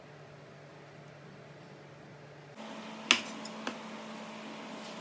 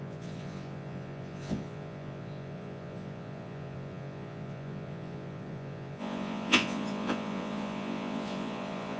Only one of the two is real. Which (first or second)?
first